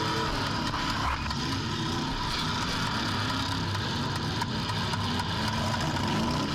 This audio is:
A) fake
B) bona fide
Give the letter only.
B